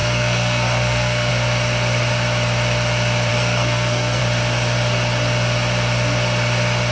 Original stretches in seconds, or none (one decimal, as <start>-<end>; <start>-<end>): 1.3-3.3; 4.2-6.9